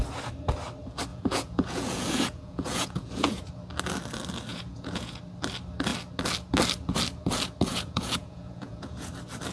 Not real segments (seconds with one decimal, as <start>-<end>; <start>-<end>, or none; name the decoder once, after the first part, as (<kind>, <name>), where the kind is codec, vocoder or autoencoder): 1.1-3.5 (vocoder, Vocos); 4.5-5.2; 7.7-9.1